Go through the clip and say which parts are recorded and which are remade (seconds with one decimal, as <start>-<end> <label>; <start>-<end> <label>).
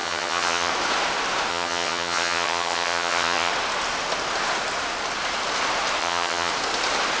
0.0-0.7 remade; 0.7-1.5 recorded; 1.5-3.5 remade; 3.5-6.0 recorded; 6.0-6.5 remade; 6.5-7.2 recorded